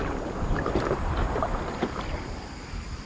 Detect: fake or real fake